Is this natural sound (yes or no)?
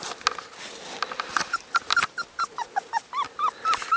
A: yes